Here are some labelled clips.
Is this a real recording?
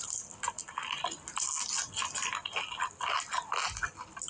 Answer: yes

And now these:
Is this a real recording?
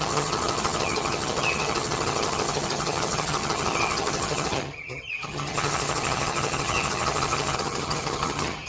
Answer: no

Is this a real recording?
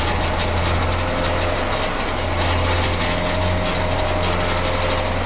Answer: yes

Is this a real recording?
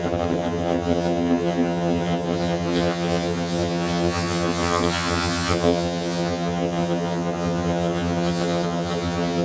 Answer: no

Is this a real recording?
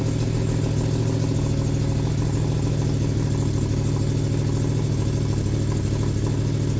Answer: yes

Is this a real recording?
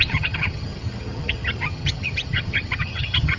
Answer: no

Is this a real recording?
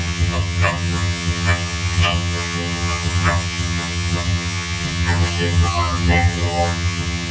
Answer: no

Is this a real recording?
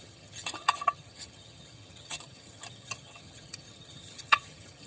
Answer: no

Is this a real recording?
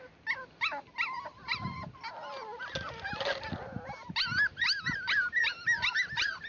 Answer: yes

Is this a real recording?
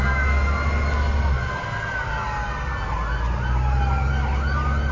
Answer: yes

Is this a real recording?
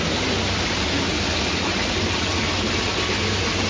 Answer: yes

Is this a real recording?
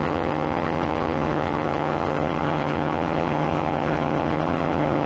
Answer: no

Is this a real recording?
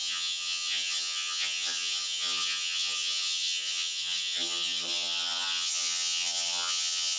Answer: no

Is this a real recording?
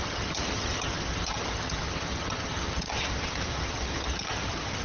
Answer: no